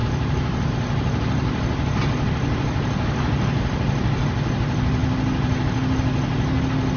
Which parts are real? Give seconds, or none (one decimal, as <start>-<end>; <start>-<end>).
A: 0.0-7.0